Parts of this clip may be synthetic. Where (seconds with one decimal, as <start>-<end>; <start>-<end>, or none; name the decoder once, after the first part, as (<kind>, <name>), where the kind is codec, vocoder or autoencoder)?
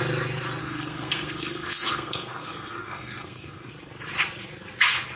0.6-3.7 (codec, SNAC)